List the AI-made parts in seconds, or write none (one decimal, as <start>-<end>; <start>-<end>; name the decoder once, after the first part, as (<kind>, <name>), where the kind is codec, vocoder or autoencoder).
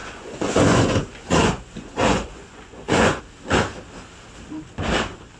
0.0-3.2 (vocoder, Vocos)